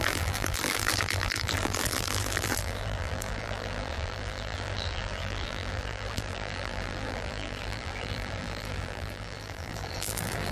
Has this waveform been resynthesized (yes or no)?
yes